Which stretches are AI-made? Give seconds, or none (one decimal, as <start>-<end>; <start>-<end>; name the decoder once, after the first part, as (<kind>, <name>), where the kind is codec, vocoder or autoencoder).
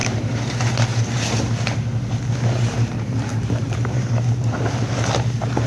0.0-0.5 (vocoder, BigVGAN v2); 0.9-1.5; 3.3-4.2